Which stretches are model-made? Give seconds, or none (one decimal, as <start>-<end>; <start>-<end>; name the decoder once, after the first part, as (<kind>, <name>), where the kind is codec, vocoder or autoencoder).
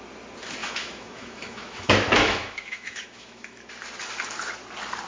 0.6-3.7 (autoencoder, DAC-VAE)